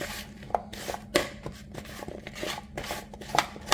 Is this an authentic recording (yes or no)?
yes